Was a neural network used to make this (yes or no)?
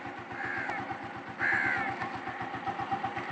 no